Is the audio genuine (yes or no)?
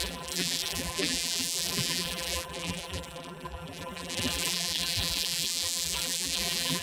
no